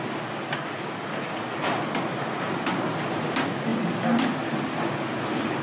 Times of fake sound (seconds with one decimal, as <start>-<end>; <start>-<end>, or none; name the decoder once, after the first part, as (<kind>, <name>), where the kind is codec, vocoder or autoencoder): none

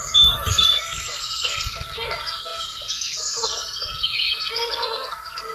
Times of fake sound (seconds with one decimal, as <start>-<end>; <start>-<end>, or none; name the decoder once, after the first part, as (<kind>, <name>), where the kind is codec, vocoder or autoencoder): 0.0-5.5 (codec, SNAC)

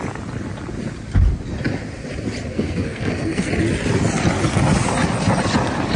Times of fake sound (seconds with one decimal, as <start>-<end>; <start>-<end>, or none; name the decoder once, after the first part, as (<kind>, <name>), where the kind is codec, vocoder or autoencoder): 2.5-3.5 (codec, SNAC)

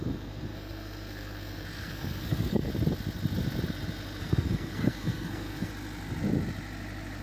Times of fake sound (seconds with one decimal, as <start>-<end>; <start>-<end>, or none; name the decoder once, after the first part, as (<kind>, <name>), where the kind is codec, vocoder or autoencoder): 0.0-2.7 (codec, SNAC); 4.2-5.7